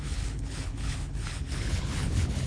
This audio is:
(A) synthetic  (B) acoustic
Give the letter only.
A